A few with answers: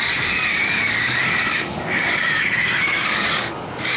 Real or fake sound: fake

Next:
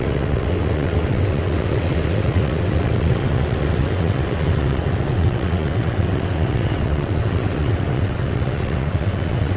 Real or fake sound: fake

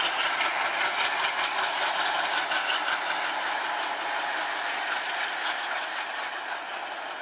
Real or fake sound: real